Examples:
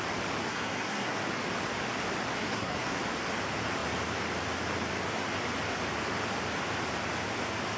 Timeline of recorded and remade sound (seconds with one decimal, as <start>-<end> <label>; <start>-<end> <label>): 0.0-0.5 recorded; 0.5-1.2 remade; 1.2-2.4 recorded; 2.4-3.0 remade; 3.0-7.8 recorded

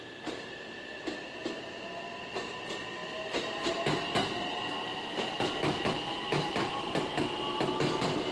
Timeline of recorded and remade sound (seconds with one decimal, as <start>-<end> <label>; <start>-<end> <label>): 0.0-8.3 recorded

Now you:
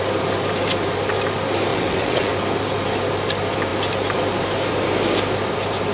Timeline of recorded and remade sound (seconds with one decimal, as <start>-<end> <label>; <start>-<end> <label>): 0.0-1.7 recorded; 1.7-2.3 remade; 2.3-5.9 recorded

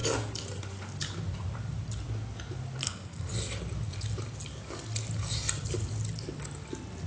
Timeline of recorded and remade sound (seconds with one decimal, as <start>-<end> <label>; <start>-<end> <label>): 0.0-2.8 recorded; 2.8-3.3 remade; 3.3-7.1 recorded

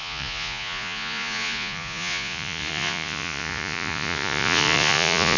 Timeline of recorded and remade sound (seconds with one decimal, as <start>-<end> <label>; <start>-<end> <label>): 0.0-5.4 remade

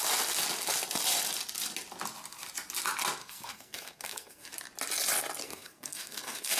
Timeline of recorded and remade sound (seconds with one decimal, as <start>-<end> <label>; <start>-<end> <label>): 0.0-3.2 recorded; 3.2-4.5 remade; 4.5-5.4 recorded; 5.4-6.6 remade

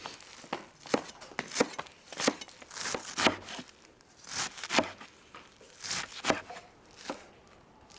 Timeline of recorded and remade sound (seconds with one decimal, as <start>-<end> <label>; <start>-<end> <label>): 0.0-8.0 recorded